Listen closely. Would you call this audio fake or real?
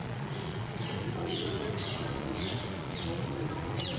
fake